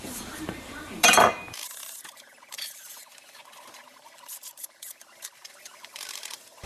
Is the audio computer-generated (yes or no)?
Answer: yes